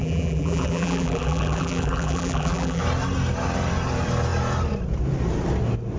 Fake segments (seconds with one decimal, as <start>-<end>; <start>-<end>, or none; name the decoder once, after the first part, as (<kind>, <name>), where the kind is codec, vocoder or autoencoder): 0.0-2.8 (vocoder, BigVGAN v2)